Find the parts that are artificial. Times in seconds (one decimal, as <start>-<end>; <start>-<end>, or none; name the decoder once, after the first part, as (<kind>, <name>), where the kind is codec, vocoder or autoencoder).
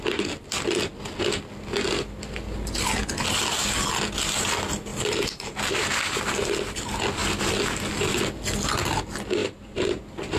4.9-6.2 (vocoder, BigVGAN v2); 9.4-10.0